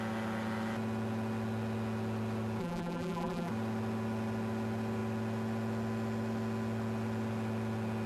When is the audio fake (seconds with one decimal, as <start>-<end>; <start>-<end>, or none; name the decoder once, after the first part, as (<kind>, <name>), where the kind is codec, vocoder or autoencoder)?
2.6-3.5 (vocoder, BigVGAN v2)

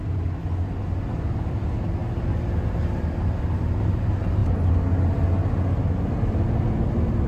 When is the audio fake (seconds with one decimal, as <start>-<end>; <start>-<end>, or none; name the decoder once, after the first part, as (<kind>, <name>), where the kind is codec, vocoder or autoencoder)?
0.0-4.4 (vocoder, BigVGAN v2); 6.1-7.3

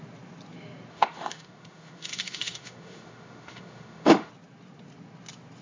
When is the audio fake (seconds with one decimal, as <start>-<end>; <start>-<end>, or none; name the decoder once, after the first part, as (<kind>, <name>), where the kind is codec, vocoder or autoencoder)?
0.9-4.3 (autoencoder, DAC-VAE)

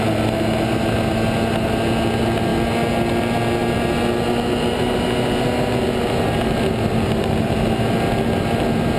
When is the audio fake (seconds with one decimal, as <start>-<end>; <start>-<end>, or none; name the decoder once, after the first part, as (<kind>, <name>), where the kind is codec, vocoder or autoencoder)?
none

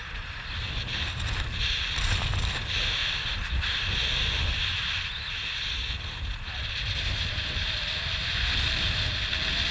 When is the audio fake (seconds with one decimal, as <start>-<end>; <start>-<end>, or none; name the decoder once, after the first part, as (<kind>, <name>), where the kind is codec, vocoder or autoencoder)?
none

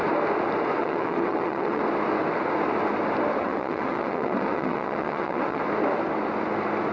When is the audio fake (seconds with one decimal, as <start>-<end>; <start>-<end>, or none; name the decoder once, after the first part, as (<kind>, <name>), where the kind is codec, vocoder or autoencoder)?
0.8-1.8 (vocoder, WaveNeXt); 3.4-5.6

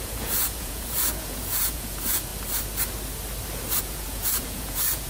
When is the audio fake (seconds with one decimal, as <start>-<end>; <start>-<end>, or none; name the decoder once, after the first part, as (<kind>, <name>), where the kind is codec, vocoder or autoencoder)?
0.0-2.3 (vocoder, Vocos); 3.8-5.1

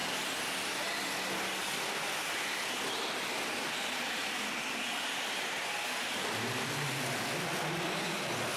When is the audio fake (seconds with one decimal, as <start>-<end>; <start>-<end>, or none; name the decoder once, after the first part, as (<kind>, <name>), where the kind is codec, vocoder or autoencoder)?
none